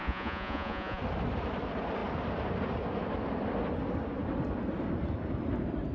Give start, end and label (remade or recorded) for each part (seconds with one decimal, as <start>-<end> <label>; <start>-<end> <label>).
0.0-1.0 remade; 1.0-5.9 recorded